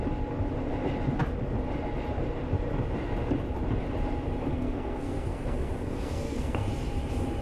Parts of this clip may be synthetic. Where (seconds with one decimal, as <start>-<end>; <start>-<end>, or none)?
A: 4.5-6.7